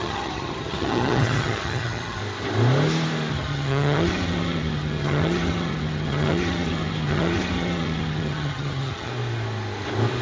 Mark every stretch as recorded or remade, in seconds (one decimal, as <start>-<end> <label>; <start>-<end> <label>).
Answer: 0.0-2.2 remade; 2.2-3.3 recorded; 3.3-9.1 remade; 9.1-10.2 recorded